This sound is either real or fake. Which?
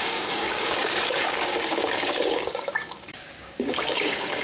fake